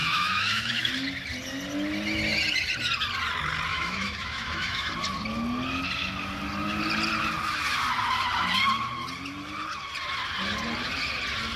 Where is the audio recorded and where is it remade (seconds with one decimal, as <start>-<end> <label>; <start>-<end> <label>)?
0.0-0.9 remade; 0.9-3.7 recorded; 3.7-4.9 remade; 4.9-11.6 recorded